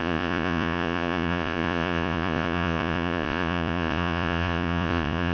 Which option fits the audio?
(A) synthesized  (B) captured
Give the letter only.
A